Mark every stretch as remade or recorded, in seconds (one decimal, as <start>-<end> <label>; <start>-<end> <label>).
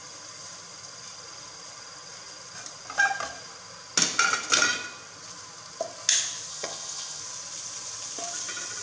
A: 0.0-6.5 recorded; 6.5-7.2 remade; 7.2-8.8 recorded